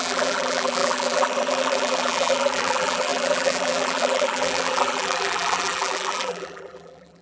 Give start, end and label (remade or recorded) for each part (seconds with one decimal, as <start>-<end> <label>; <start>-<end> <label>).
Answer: 0.0-7.2 remade